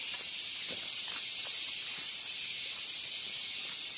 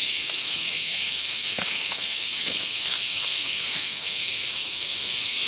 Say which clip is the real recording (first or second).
first